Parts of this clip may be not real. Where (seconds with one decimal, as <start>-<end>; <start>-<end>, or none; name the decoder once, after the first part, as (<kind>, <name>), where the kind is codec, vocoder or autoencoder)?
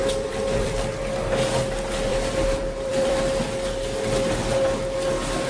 0.0-0.7 (vocoder, BigVGAN v2); 2.1-3.2